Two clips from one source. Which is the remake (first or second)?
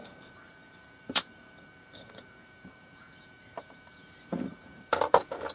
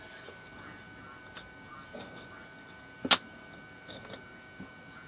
first